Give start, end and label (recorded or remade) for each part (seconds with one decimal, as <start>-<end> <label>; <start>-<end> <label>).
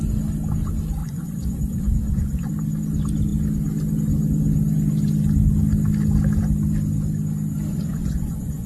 0.0-1.0 recorded; 1.0-2.5 remade; 2.5-7.7 recorded; 7.7-8.7 remade